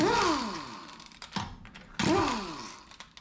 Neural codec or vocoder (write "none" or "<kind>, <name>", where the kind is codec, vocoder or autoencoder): none